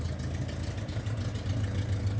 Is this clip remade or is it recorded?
recorded